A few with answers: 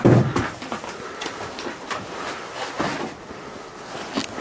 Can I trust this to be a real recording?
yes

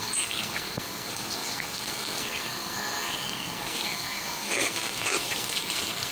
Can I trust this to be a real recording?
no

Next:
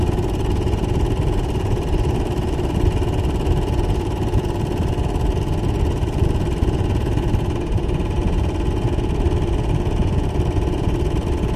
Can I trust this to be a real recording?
no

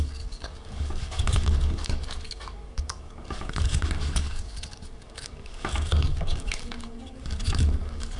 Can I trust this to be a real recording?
no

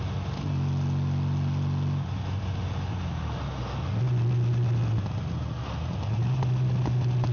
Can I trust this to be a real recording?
yes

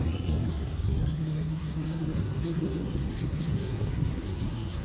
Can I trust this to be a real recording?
no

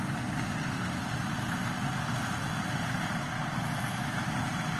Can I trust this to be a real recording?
yes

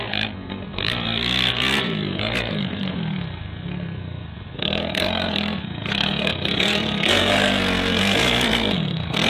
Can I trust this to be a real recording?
no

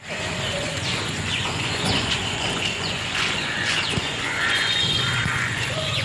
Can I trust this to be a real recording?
no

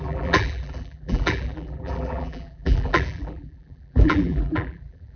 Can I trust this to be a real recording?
no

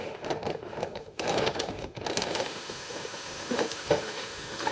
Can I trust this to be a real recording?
no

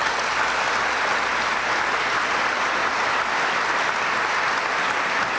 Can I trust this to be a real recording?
yes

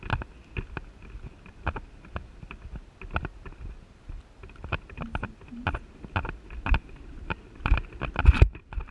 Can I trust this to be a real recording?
yes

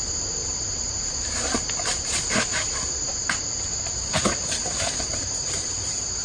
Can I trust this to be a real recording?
no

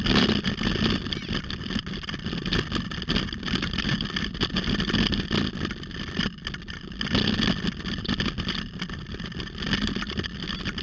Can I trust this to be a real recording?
yes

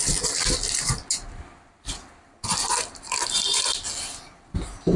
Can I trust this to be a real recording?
yes